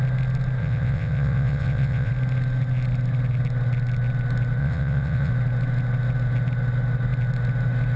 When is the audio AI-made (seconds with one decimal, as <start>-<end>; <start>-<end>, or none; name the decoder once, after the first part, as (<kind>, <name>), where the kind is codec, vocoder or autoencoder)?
0.6-2.1 (vocoder, WaveNeXt); 4.6-5.3